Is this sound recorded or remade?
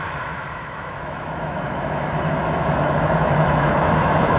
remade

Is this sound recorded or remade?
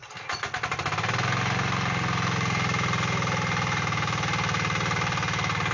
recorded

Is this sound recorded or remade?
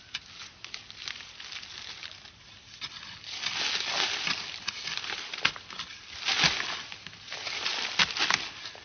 recorded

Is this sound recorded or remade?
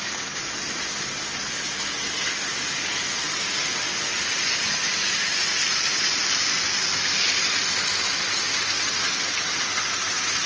recorded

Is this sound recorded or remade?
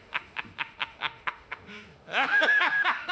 remade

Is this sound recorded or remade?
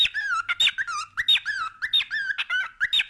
recorded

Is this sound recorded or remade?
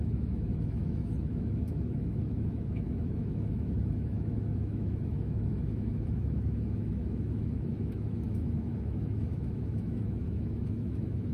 remade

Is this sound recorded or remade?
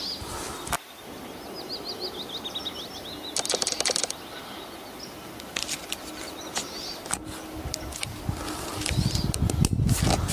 recorded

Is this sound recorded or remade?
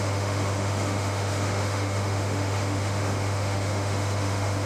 remade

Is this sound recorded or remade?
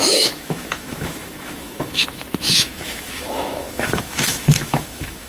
remade